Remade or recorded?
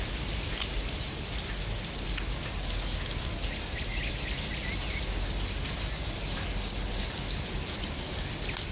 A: recorded